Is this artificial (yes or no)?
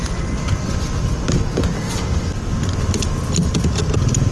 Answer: no